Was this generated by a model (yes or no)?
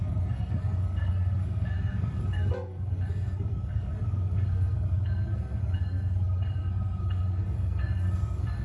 yes